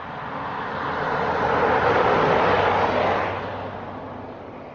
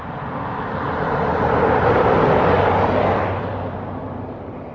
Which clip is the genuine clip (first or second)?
first